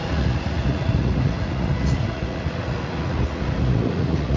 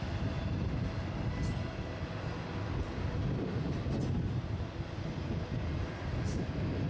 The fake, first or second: first